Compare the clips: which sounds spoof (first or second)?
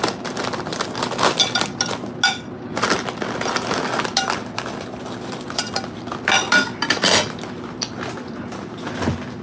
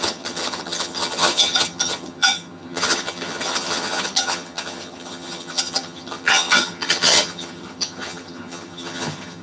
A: second